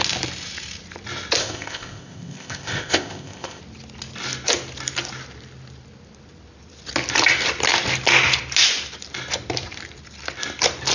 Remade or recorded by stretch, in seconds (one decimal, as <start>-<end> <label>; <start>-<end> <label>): 0.0-1.4 recorded; 1.4-3.6 remade; 3.6-10.9 recorded